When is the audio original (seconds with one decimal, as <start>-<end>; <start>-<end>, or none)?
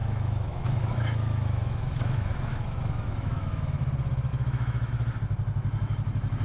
3.8-4.3; 4.9-6.4